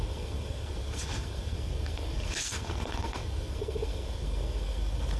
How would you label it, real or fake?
fake